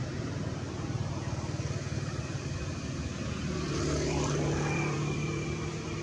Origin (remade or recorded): remade